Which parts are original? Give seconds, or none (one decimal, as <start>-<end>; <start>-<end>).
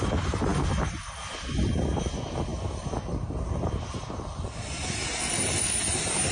0.0-6.3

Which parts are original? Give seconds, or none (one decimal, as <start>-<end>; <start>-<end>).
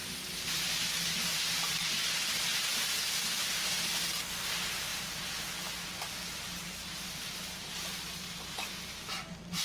3.0-4.9; 5.4-6.6; 9.0-9.6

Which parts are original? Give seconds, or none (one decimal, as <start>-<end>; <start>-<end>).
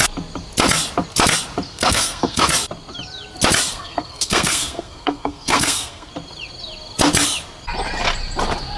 0.0-1.7; 2.5-3.7; 6.1-8.8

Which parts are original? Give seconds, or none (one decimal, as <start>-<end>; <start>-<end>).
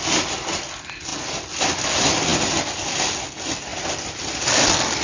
0.0-5.0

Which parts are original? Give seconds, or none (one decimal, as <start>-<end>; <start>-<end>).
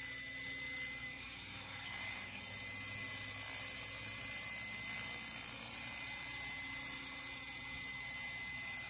0.0-1.0; 2.4-8.9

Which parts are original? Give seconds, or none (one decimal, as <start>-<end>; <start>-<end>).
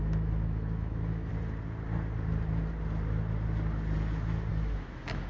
1.3-4.5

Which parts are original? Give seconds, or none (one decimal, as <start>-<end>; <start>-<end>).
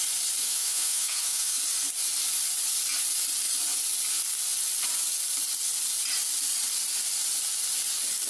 0.0-0.4; 1.6-8.3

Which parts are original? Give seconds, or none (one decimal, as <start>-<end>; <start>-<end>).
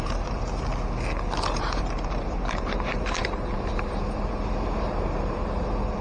0.7-1.5